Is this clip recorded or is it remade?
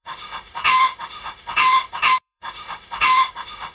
remade